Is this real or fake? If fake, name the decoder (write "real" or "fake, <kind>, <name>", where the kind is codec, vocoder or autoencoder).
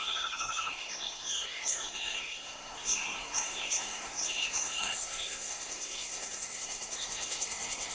fake, codec, SNAC